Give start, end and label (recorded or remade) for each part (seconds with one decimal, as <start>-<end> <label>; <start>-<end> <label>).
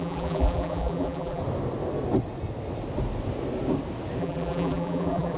0.0-1.4 remade; 1.4-4.2 recorded; 4.2-5.4 remade